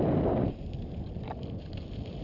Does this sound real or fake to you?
real